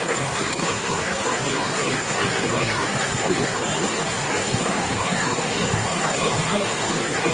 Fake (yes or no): yes